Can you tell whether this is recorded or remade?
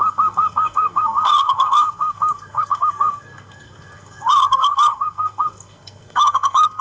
remade